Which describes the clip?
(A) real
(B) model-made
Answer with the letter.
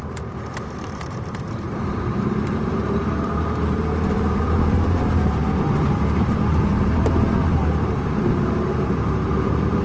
B